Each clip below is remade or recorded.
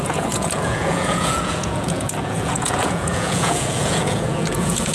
remade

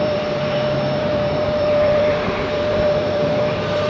remade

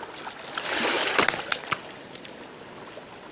recorded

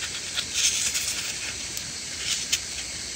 recorded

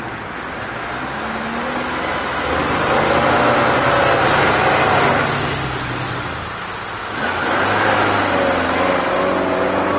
recorded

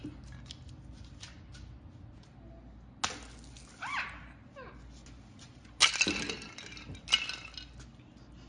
recorded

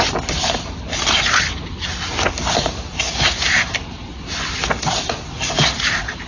recorded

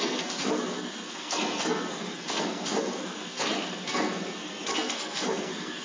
remade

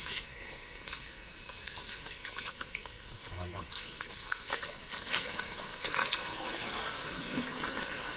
remade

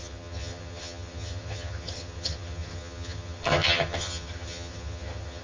remade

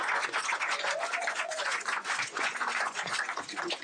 remade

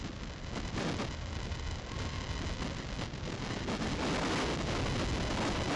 recorded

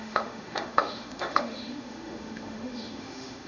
remade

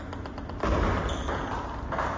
recorded